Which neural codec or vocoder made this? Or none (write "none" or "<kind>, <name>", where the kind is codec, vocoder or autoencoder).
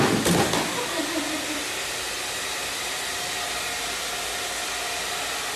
none